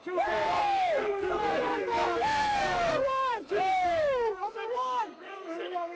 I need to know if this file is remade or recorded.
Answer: remade